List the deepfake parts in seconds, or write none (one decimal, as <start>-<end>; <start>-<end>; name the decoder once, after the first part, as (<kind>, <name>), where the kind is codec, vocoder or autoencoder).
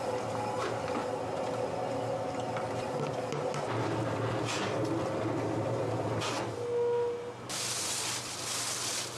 none